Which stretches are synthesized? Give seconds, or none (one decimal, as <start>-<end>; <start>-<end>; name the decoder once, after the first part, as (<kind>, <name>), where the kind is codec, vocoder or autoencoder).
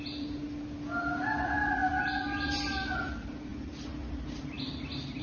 none